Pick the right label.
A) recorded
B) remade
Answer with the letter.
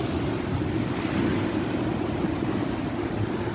A